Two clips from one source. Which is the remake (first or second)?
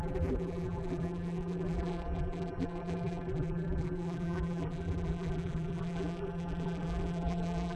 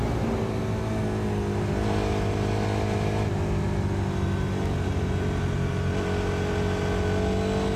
first